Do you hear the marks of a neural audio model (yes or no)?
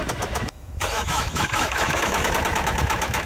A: yes